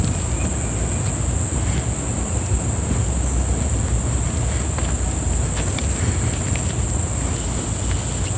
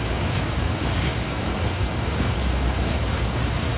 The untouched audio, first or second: first